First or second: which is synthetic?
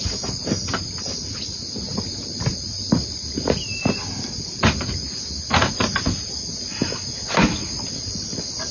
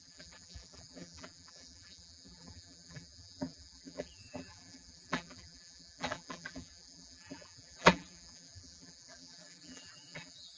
second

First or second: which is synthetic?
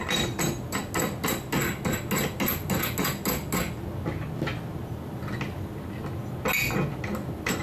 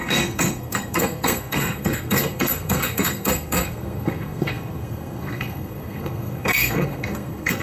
second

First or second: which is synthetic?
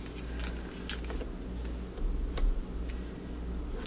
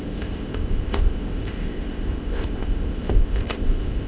second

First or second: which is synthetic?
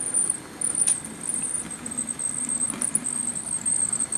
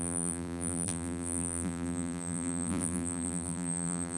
second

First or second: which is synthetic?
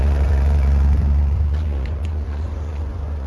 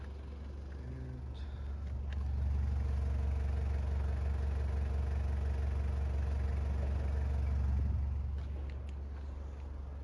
first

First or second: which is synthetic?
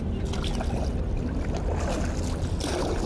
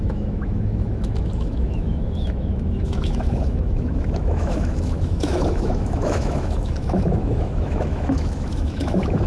second